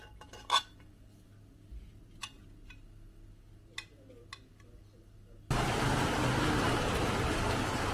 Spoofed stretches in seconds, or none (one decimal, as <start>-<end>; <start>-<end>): none